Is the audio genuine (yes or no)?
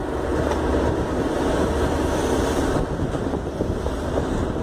yes